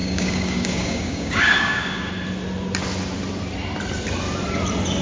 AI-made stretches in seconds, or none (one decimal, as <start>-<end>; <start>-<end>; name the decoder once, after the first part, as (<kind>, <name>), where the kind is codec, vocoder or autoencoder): 0.0-2.1 (codec, DAC)